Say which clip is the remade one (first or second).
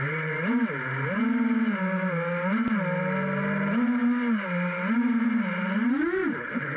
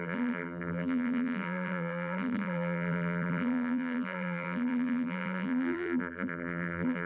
second